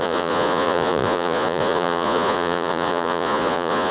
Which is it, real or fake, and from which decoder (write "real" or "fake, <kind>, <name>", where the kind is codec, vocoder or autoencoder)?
fake, vocoder, Vocos